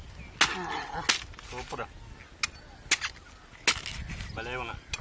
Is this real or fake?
real